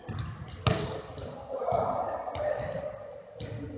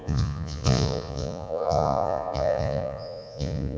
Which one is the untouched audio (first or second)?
first